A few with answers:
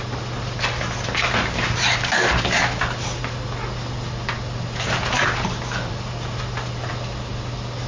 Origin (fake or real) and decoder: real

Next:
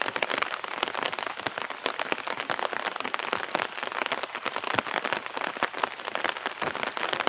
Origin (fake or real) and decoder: real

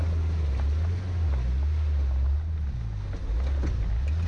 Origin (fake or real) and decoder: real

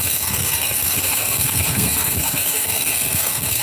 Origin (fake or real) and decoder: fake, codec, SNAC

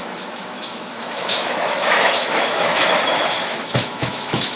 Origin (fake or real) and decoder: fake, autoencoder, DAC-VAE